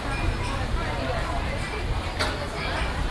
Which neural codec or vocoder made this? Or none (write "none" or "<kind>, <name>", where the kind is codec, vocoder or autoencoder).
none